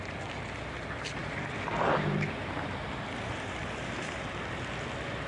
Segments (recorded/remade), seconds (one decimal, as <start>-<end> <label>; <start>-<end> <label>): 0.0-1.2 recorded; 1.2-3.3 remade; 3.3-5.3 recorded